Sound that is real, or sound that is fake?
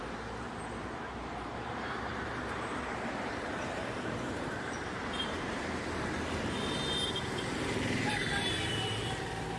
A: fake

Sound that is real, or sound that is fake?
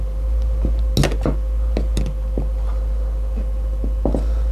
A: real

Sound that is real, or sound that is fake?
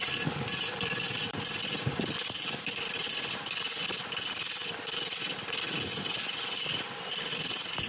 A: fake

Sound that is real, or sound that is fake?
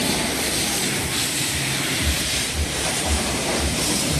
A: fake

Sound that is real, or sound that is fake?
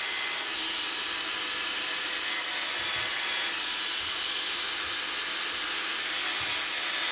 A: real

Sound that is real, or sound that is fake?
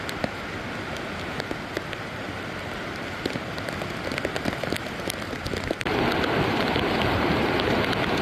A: real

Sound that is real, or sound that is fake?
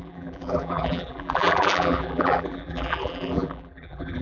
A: fake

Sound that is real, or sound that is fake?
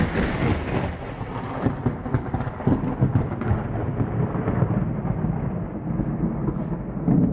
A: real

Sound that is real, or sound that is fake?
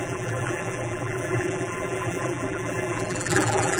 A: fake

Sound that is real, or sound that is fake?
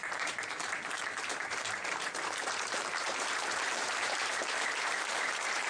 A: fake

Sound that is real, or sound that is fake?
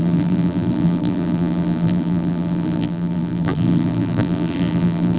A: fake